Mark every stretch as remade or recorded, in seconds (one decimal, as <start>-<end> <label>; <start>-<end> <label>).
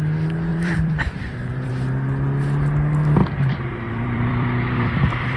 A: 0.0-0.5 recorded; 0.5-1.7 remade; 1.7-3.2 recorded; 3.2-5.4 remade